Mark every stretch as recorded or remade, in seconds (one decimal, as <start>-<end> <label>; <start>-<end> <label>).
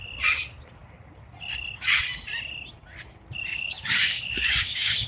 0.0-3.5 recorded; 3.5-5.1 remade